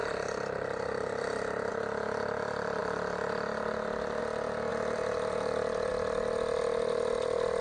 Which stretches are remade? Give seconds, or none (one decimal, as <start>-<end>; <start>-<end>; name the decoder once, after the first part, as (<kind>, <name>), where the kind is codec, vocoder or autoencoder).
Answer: 0.0-1.7 (vocoder, BigVGAN v2); 4.7-5.9